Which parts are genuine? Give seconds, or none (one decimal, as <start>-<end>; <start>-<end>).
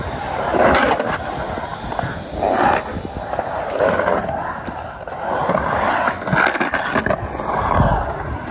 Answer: 0.0-8.5